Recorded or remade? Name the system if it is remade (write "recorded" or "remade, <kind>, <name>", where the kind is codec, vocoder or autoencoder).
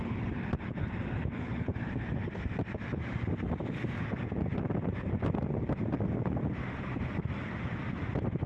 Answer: remade, vocoder, BigVGAN v2